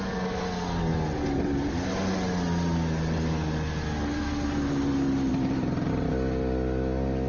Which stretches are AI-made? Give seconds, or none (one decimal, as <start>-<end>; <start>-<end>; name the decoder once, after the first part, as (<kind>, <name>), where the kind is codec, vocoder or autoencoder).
none